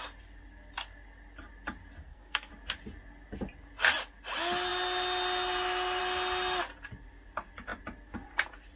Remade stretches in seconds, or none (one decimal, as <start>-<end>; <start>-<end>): 2.0-2.5